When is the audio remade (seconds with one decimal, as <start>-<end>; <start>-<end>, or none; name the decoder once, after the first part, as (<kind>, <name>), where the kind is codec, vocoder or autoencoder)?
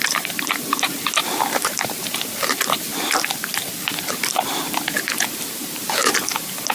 0.0-2.9 (vocoder, BigVGAN v2); 5.0-6.7